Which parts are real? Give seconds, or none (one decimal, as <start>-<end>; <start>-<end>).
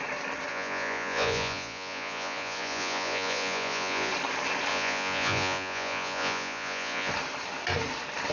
0.0-0.5; 4.1-4.7; 7.1-8.3